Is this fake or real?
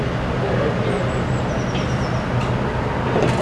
real